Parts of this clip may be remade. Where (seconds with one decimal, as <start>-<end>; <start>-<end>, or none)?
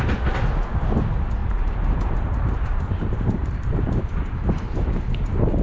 1.4-3.8